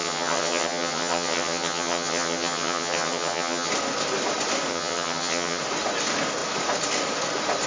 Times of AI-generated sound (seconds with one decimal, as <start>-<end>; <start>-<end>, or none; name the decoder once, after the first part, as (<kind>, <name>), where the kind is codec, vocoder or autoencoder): 0.0-3.7 (vocoder, HiFi-GAN); 4.7-5.6